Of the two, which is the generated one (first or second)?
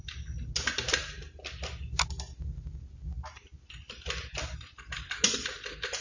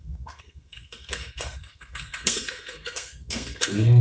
second